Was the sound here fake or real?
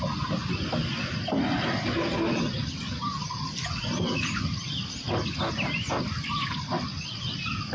real